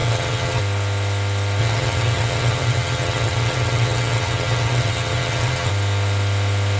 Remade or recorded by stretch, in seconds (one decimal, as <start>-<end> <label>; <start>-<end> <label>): 0.0-0.6 remade; 0.6-1.6 recorded; 1.6-5.7 remade; 5.7-6.8 recorded